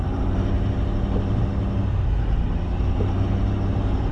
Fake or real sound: real